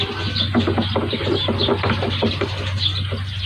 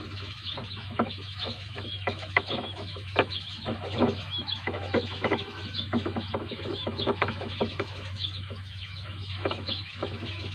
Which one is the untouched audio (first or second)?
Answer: first